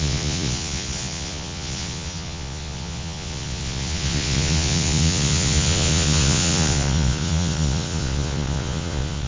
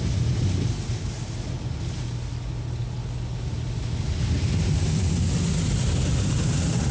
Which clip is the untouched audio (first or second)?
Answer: second